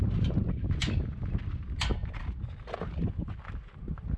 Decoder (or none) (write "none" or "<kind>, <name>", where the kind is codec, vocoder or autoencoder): none